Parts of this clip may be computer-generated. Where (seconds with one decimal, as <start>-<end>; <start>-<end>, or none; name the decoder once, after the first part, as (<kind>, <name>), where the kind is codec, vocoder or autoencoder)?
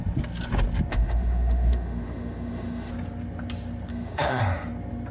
0.9-2.9 (autoencoder, DAC-VAE); 3.9-4.4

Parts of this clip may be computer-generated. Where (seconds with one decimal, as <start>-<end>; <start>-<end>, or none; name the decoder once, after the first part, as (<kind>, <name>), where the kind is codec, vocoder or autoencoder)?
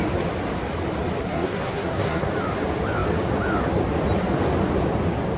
1.2-2.3 (codec, SNAC)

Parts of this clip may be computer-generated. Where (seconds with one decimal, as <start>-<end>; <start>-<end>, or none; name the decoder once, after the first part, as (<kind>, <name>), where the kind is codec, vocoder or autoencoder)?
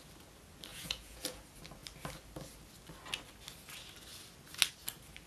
0.7-1.4 (vocoder, Vocos)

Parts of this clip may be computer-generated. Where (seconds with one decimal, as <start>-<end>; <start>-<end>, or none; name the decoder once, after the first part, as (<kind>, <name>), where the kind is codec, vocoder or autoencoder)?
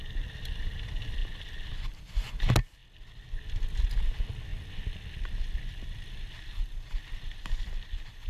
none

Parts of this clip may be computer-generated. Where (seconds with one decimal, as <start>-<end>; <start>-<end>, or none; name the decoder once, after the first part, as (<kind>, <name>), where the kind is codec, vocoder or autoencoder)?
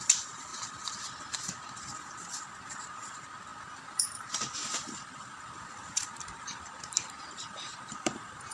0.0-0.5 (vocoder, BigVGAN v2); 2.4-8.5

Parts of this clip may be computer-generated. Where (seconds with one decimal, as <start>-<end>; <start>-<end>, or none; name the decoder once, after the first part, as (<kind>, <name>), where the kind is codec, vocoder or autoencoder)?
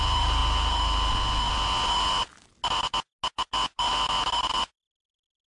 none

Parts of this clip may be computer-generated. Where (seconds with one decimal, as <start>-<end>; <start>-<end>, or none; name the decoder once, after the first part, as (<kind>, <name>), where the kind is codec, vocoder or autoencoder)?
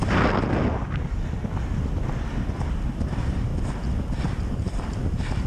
none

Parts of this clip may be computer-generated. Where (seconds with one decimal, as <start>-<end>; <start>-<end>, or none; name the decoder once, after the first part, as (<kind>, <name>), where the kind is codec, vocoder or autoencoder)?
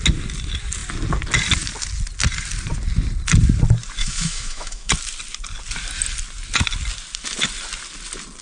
4.0-4.9 (autoencoder, DAC-VAE)